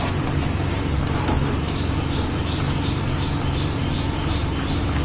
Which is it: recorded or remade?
remade